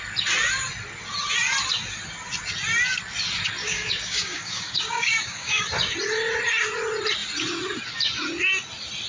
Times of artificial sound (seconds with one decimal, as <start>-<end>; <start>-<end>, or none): 3.6-5.6